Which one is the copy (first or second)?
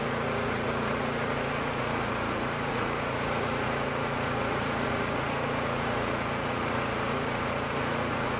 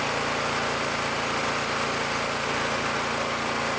first